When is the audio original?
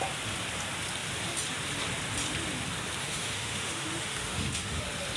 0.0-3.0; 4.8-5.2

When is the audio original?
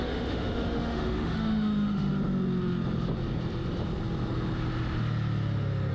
2.1-5.9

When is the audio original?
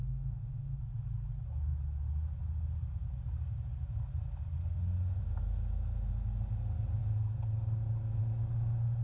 0.8-9.0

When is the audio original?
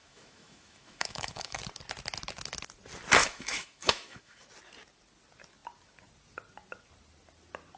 1.6-3.2; 4.4-7.8